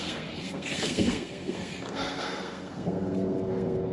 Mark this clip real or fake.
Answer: fake